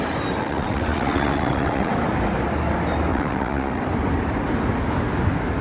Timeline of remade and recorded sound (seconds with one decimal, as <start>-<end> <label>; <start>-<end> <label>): 0.0-0.4 recorded; 0.4-1.9 remade; 1.9-3.1 recorded; 3.1-3.8 remade; 3.8-5.6 recorded

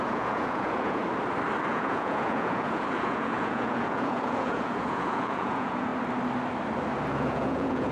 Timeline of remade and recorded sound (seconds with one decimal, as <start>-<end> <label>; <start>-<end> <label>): 0.0-1.0 remade; 1.0-1.7 recorded; 1.7-5.9 remade; 5.9-7.1 recorded; 7.1-7.9 remade